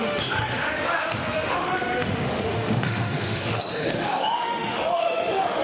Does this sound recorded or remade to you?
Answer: remade